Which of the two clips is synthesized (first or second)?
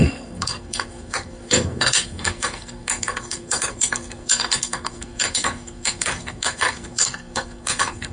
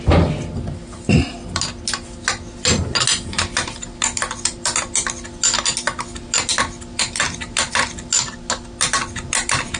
first